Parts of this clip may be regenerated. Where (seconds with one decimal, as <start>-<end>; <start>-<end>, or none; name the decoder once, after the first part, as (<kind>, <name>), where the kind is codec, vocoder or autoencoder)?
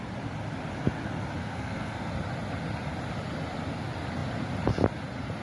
1.4-2.1 (codec, SNAC)